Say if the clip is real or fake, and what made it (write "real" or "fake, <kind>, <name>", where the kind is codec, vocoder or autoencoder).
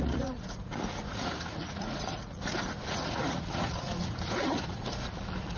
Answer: fake, vocoder, Vocos